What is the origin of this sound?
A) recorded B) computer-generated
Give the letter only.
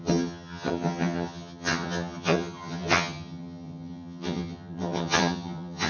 B